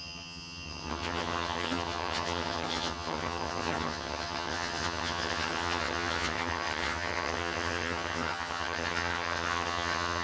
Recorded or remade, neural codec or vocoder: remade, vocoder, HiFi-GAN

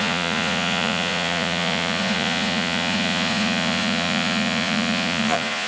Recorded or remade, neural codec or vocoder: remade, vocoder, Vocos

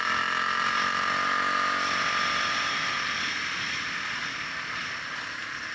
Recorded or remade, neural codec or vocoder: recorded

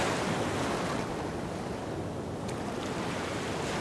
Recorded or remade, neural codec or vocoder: recorded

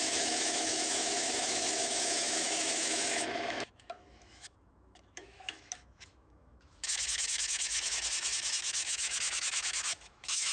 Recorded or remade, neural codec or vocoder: remade, autoencoder, DAC-VAE